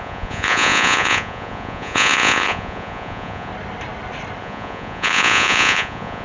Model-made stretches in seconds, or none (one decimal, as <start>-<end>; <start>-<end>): 0.0-3.5; 4.4-6.2